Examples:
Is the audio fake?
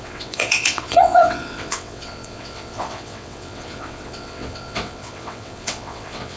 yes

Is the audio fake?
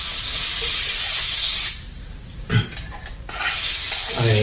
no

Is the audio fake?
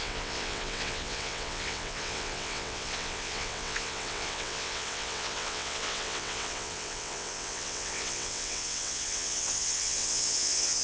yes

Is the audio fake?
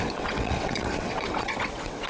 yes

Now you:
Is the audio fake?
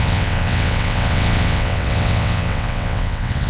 yes